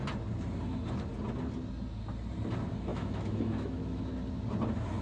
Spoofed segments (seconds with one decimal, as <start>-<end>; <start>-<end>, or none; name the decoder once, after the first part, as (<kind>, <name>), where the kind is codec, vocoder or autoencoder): 2.9-4.0 (autoencoder, DAC-VAE)